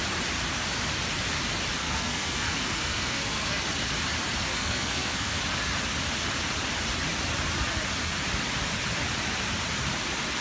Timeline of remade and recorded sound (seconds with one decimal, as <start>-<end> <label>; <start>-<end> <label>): 0.0-1.8 recorded; 1.8-3.6 remade; 3.6-4.5 recorded; 4.5-5.4 remade; 5.4-10.4 recorded